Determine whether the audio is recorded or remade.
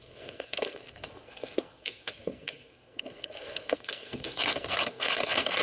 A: remade